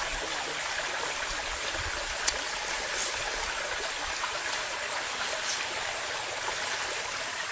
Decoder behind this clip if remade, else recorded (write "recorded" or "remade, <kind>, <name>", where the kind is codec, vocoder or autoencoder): recorded